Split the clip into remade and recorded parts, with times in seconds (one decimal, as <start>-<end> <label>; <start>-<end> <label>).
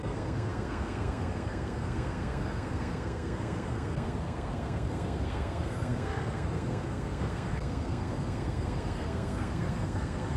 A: 0.0-10.4 remade